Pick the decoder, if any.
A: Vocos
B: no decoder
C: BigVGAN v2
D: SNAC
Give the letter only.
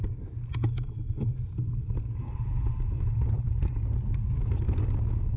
B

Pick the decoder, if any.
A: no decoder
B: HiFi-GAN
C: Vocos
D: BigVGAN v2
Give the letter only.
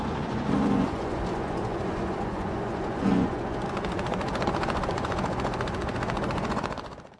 C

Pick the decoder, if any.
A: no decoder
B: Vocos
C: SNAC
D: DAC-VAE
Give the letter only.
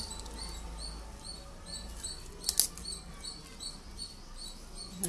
A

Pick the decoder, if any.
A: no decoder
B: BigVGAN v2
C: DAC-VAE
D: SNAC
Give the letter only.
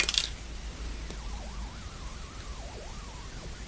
A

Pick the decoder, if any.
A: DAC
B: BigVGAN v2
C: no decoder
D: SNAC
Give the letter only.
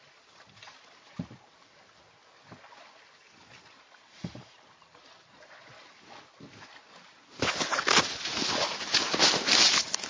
C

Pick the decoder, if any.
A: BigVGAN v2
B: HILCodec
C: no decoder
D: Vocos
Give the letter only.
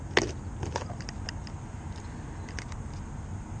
C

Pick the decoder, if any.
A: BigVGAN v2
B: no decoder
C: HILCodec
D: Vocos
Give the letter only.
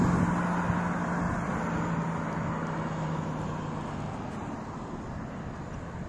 B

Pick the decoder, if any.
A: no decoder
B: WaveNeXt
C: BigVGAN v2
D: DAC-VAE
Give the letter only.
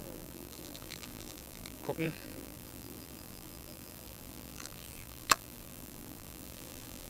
C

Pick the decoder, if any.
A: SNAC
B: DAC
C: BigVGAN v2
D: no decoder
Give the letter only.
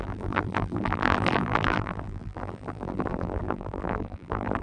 C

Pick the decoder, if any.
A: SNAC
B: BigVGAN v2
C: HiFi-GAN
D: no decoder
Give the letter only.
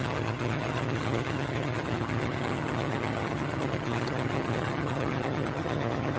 C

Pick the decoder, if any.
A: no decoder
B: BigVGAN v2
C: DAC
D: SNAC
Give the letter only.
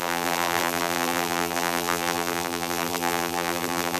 B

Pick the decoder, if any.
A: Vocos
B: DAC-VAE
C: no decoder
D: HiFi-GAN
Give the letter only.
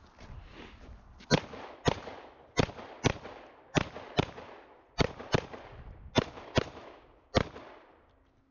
C